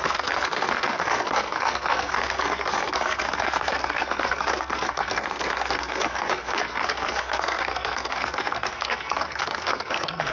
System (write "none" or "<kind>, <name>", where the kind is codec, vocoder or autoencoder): codec, SNAC